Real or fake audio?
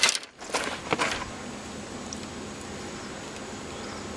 real